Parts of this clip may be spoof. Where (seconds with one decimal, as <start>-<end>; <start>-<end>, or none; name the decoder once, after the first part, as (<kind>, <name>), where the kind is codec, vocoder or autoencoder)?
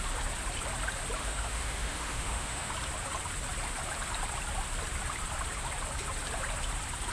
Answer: 1.2-2.7 (autoencoder, DAC-VAE)